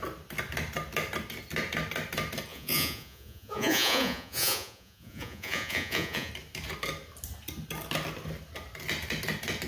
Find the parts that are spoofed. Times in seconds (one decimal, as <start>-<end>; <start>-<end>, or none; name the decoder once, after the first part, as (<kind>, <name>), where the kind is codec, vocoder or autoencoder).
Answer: 2.5-6.3 (vocoder, Vocos)